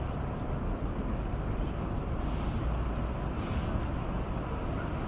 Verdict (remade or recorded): recorded